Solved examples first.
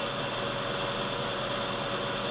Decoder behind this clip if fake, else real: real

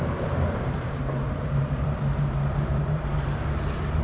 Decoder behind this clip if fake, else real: fake, vocoder, BigVGAN v2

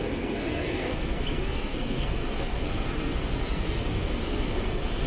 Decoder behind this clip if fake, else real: fake, codec, SNAC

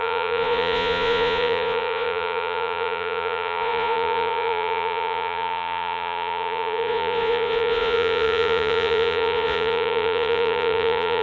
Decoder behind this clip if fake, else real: fake, vocoder, Vocos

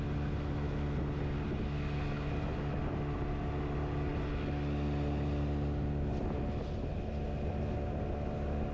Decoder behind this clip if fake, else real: real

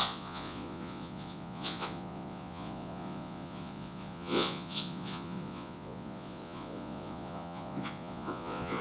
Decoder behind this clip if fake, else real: fake, vocoder, Vocos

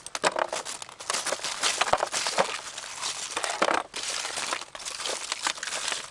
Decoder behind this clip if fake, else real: real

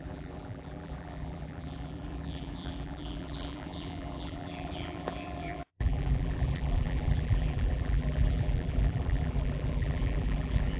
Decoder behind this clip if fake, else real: fake, vocoder, BigVGAN v2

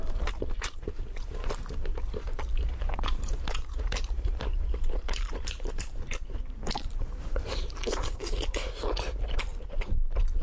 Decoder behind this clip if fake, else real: fake, vocoder, BigVGAN v2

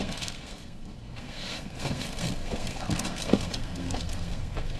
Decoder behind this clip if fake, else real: fake, codec, SNAC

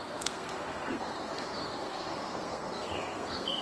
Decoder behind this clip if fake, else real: fake, codec, SNAC